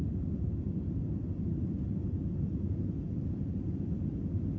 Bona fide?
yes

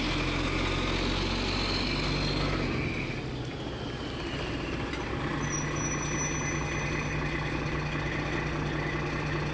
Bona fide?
yes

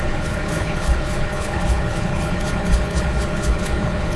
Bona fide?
no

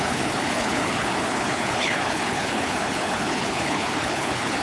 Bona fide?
no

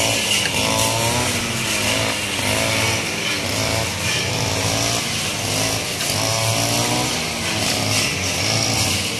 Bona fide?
yes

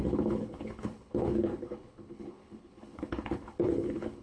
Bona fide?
no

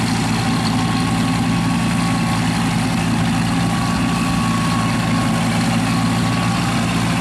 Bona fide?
yes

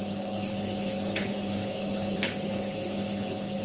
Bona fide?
no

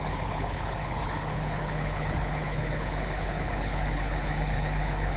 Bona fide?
no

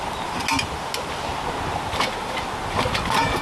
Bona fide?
yes